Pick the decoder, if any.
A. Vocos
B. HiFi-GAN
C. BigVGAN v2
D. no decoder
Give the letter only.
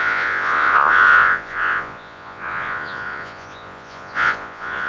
A